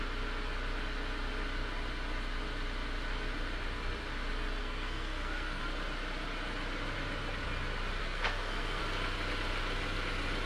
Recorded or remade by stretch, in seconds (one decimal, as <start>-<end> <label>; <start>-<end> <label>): 0.0-4.6 recorded; 4.6-5.6 remade; 5.6-8.0 recorded; 8.0-8.8 remade; 8.8-10.5 recorded